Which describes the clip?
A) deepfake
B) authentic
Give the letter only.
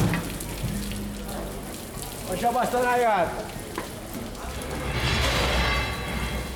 B